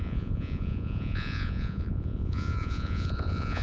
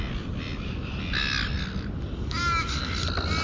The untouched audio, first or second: second